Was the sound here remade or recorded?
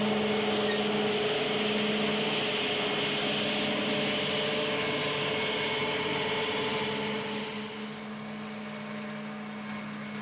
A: recorded